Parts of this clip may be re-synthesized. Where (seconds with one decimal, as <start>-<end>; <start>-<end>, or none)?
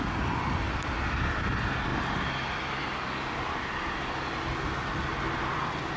none